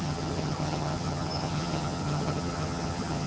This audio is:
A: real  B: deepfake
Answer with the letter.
B